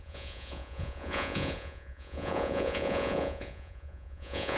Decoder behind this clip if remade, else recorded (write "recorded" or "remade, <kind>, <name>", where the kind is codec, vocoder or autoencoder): remade, vocoder, Vocos